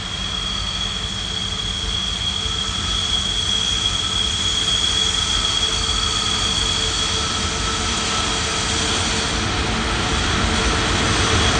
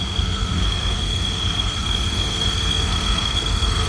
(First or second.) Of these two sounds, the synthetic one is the second